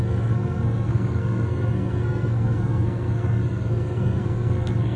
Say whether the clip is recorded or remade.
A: remade